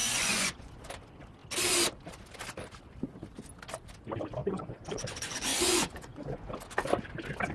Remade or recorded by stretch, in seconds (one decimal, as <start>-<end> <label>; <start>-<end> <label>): 0.0-0.9 remade; 0.9-4.4 recorded; 4.4-6.5 remade; 6.5-7.5 recorded